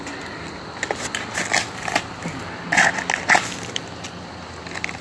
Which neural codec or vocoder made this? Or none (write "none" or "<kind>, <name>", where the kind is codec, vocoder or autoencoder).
none